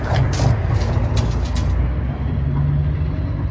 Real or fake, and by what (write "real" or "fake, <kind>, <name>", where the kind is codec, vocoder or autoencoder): real